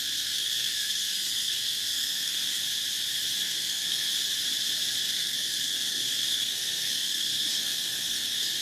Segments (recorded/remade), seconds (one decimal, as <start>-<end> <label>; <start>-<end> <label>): 0.0-2.6 remade; 2.6-3.4 recorded; 3.4-4.1 remade; 4.1-5.0 recorded; 5.0-8.6 remade